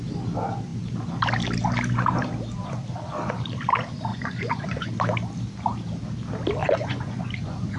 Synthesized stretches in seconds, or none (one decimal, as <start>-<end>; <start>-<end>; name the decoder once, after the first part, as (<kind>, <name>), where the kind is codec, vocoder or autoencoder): 4.1-4.9 (vocoder, Vocos); 6.6-7.8

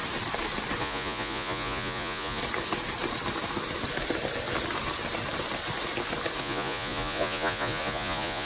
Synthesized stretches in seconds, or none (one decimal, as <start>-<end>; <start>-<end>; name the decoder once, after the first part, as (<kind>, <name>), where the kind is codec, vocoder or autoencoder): 0.8-2.4 (vocoder, Vocos); 6.4-8.5

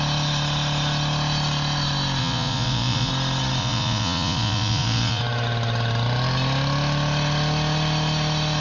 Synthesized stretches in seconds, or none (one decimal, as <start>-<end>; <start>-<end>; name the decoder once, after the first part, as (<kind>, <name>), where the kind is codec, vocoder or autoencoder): 2.2-3.1 (vocoder, Vocos); 3.6-5.2

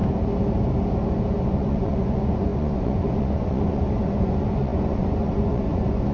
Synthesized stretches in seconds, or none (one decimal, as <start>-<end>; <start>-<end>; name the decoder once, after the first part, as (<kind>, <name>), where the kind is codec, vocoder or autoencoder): 1.5-6.1 (vocoder, Vocos)

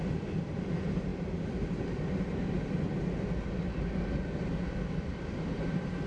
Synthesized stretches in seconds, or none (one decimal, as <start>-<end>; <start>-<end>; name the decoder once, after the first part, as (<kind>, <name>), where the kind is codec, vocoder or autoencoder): none

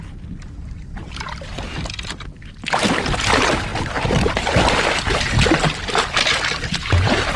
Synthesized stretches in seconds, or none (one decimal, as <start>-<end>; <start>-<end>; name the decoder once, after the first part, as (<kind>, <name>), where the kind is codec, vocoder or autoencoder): none

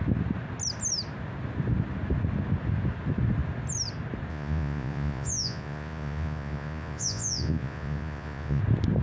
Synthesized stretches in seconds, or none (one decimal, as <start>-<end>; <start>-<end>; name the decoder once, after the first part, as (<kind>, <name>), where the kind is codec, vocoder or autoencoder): 4.3-8.6 (vocoder, Vocos)

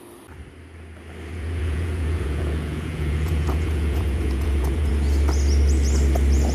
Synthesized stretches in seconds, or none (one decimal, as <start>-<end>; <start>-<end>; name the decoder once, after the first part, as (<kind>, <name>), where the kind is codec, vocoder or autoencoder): 1.3-4.9 (vocoder, Vocos)